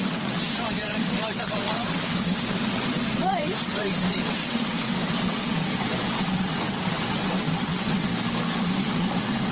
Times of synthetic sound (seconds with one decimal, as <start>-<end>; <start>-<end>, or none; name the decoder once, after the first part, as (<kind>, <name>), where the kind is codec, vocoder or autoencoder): 0.0-8.1 (vocoder, WaveNeXt); 8.7-9.5